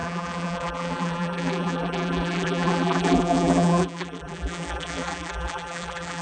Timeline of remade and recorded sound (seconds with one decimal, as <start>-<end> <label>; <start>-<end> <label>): 0.0-6.2 remade